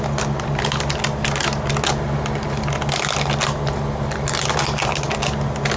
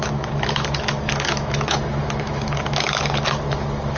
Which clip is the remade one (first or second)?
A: second